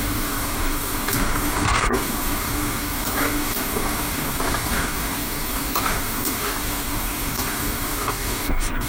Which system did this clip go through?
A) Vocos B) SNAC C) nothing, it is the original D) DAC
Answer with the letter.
D